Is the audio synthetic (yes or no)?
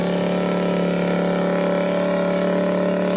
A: no